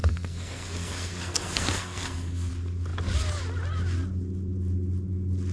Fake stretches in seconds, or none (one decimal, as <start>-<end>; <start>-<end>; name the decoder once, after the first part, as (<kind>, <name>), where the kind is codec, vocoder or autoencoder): 0.0-2.5 (codec, SNAC)